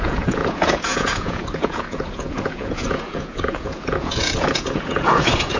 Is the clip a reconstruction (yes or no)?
yes